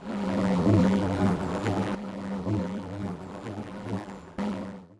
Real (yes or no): no